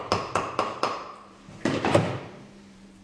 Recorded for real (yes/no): no